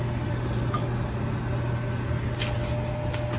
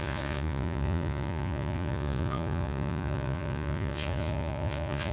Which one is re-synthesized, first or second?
second